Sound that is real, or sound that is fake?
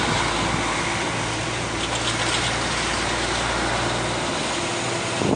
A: real